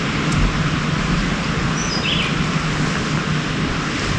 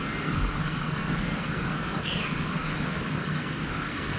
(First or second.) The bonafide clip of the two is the first